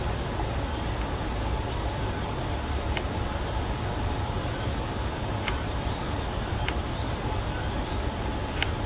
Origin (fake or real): real